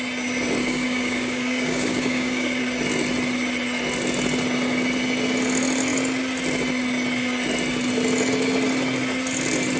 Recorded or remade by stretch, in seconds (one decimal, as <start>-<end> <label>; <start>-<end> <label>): 0.0-0.6 recorded; 0.6-2.6 remade; 2.6-9.8 recorded